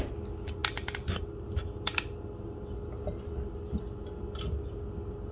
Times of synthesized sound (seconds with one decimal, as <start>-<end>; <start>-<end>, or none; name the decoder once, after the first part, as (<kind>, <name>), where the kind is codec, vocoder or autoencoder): none